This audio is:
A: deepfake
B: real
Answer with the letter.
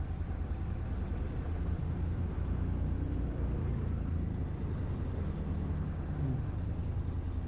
B